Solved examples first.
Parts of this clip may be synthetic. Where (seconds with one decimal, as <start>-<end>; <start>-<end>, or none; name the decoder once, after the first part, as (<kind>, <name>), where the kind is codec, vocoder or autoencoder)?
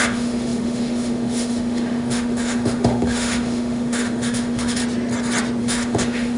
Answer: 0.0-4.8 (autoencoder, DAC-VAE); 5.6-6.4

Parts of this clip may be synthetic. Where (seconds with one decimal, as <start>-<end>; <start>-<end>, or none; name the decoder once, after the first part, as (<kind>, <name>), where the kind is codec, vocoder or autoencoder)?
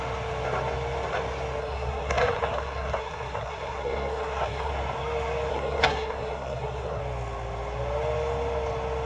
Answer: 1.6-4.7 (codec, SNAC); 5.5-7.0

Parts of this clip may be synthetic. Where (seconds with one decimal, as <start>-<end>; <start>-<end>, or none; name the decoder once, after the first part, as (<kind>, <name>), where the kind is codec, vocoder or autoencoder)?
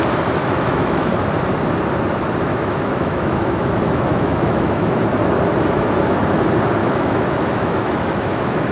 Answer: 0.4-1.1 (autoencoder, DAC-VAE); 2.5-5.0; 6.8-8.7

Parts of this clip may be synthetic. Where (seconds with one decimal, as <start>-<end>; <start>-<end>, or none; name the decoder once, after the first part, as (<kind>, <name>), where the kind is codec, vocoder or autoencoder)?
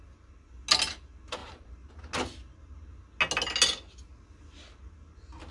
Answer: 1.4-1.9 (vocoder, BigVGAN v2)